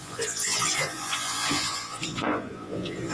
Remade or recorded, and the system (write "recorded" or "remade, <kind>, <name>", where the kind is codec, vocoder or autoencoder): remade, vocoder, Vocos